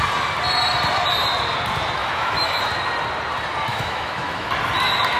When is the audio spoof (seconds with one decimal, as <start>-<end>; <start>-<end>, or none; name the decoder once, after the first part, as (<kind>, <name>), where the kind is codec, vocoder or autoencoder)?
2.0-2.6 (autoencoder, DAC-VAE); 3.7-4.5